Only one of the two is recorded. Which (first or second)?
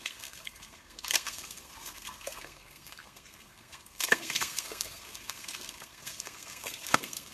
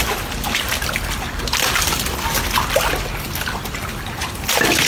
second